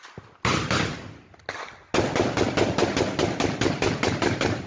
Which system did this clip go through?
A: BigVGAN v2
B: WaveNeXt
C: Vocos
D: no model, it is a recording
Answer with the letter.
D